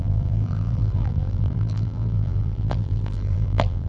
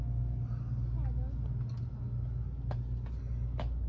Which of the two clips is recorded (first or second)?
second